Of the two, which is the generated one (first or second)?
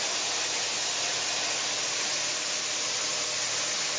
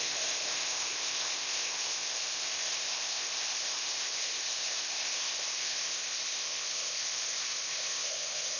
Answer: second